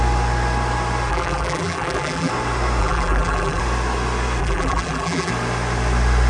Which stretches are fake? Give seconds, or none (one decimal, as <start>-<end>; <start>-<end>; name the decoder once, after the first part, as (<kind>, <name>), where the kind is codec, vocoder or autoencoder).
1.1-2.3 (vocoder, BigVGAN v2); 2.8-3.6; 4.4-5.3